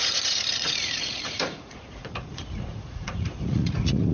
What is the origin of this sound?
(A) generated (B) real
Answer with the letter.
A